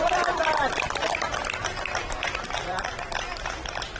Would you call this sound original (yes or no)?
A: no